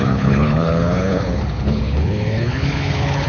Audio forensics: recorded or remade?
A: remade